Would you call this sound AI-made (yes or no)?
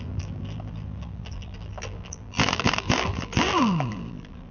yes